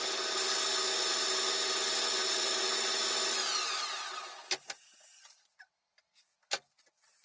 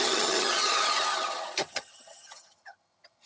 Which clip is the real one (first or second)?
first